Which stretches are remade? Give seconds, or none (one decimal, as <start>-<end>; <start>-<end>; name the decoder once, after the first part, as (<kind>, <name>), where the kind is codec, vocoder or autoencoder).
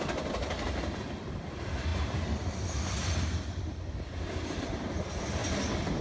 none